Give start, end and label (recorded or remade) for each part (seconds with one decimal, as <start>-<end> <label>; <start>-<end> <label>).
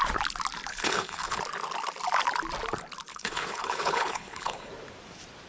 0.0-0.7 recorded; 0.7-1.4 remade; 1.4-3.1 recorded; 3.1-4.7 remade; 4.7-5.5 recorded